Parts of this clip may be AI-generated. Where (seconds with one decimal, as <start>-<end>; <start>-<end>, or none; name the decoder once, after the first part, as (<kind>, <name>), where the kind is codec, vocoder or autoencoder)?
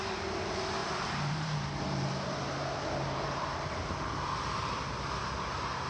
0.8-3.7 (vocoder, BigVGAN v2)